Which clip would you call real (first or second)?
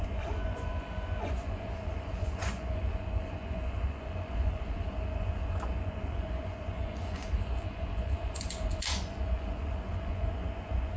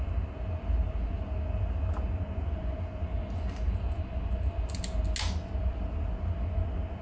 second